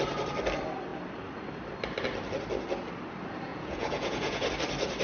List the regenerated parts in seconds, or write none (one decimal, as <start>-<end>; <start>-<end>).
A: 3.5-4.5